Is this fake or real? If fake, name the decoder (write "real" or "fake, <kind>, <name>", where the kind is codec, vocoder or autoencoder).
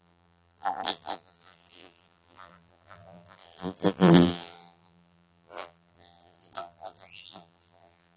fake, vocoder, BigVGAN v2